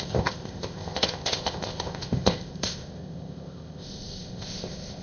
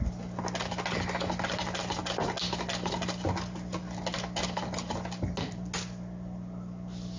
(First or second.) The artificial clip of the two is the first